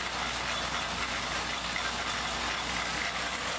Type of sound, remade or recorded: recorded